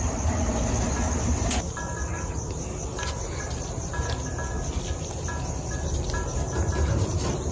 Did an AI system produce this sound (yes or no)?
no